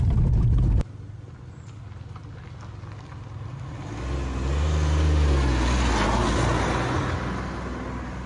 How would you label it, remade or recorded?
recorded